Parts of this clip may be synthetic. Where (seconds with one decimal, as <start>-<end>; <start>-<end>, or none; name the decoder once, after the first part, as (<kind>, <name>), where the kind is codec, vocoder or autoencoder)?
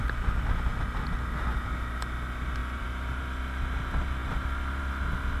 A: 2.6-3.2 (vocoder, BigVGAN v2)